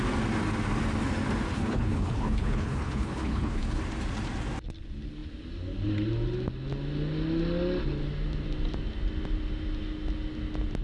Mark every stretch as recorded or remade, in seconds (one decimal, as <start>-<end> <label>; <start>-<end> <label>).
0.0-1.5 recorded; 1.5-3.8 remade; 3.8-10.8 recorded